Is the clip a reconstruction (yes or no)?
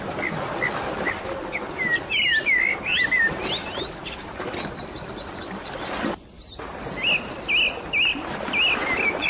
no